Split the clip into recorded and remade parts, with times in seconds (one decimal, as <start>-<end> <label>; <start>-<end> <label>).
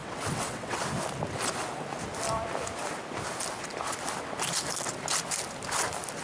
0.0-0.8 remade; 0.8-6.2 recorded